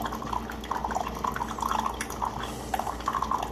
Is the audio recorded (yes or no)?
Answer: yes